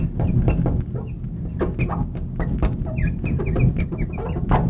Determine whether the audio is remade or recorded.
recorded